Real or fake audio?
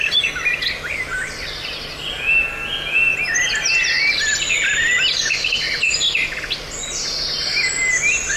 real